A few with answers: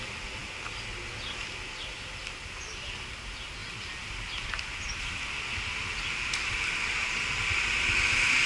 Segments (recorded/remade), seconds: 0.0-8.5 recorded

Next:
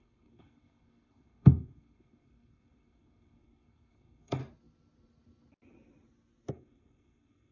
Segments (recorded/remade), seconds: 0.0-4.4 remade; 4.4-6.5 recorded; 6.5-7.5 remade

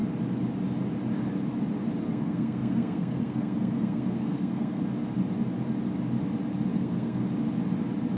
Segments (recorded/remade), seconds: 0.0-2.1 recorded; 2.1-4.8 remade; 4.8-6.7 recorded; 6.7-7.2 remade; 7.2-8.2 recorded

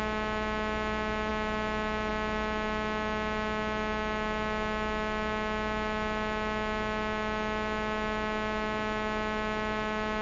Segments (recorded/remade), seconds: 0.0-10.2 recorded